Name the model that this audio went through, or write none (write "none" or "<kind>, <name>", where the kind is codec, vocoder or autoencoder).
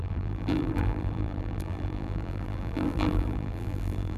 vocoder, BigVGAN v2